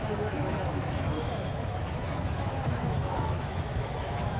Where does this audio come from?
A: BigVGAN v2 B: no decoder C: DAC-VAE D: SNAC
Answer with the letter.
C